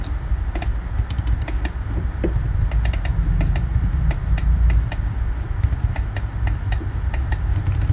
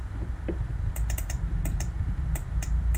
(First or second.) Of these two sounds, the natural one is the first